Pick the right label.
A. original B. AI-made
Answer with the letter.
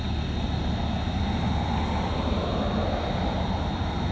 A